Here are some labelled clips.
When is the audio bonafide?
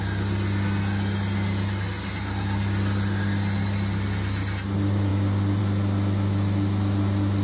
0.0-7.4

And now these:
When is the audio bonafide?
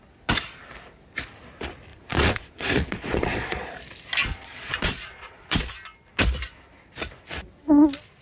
0.0-1.9; 3.7-4.2; 5.7-8.2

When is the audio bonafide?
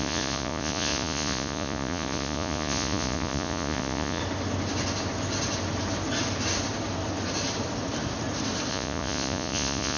4.2-8.7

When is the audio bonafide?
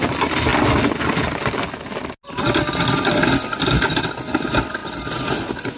0.0-5.8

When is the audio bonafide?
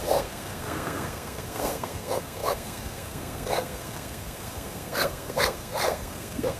none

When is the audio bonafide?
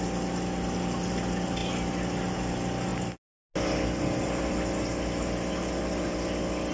0.0-6.7